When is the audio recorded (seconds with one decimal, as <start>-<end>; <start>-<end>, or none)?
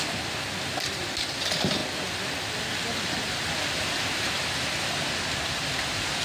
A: 0.0-6.2